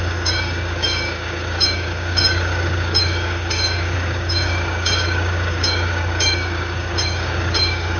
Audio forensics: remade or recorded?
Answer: remade